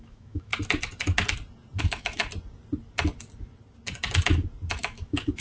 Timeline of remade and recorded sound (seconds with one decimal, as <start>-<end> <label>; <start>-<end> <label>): 0.0-0.5 remade; 0.5-1.8 recorded; 1.8-2.2 remade; 2.2-4.8 recorded; 4.8-5.4 remade